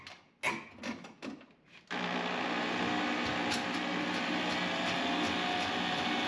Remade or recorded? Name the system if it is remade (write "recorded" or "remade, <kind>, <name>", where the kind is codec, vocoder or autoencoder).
recorded